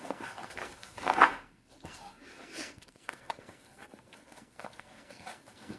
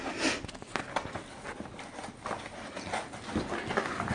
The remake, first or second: first